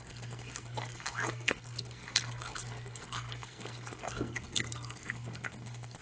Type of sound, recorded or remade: remade